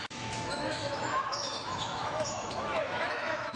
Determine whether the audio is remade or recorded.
remade